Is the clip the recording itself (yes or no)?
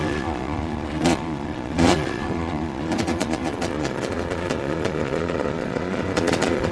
no